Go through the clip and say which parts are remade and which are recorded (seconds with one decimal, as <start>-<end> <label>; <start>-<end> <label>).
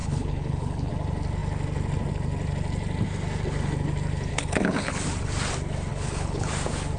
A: 0.0-0.9 remade; 0.9-4.3 recorded; 4.3-4.9 remade; 4.9-5.9 recorded; 5.9-6.5 remade; 6.5-7.0 recorded